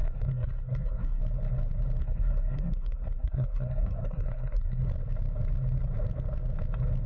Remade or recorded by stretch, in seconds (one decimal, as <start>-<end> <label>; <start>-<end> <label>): 0.0-1.2 remade; 1.2-2.0 recorded; 2.0-4.8 remade; 4.8-7.1 recorded